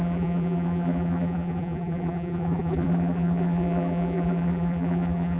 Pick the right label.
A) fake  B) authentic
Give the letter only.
A